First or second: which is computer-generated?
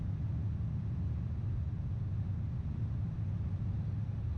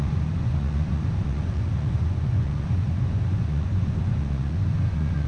second